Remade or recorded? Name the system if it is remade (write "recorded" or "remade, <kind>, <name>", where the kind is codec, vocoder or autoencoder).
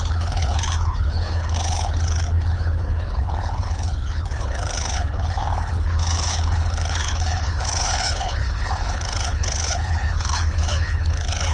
remade, codec, HILCodec